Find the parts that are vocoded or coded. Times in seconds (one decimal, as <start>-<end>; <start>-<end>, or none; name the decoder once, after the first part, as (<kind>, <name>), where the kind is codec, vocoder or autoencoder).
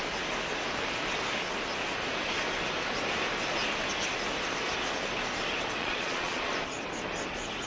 5.8-6.5 (vocoder, Vocos)